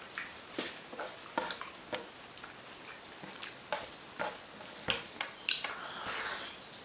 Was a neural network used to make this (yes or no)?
no